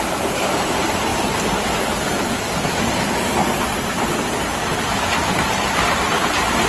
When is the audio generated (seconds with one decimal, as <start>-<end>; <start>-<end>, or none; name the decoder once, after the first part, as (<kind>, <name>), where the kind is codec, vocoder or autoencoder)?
0.0-1.1 (vocoder, BigVGAN v2); 2.0-6.7